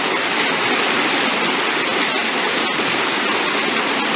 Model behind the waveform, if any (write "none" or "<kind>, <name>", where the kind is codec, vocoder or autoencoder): none